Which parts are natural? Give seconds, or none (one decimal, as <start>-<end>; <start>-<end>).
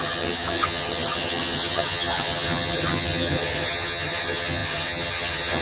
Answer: none